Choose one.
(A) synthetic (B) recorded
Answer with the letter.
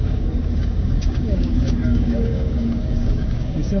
A